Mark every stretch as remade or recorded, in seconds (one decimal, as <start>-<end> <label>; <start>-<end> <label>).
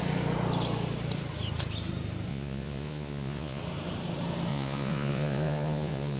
0.0-2.3 recorded; 2.3-3.6 remade; 3.6-4.5 recorded; 4.5-6.2 remade